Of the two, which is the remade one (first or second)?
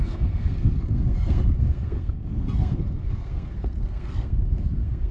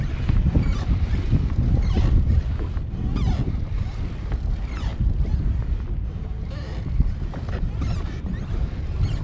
first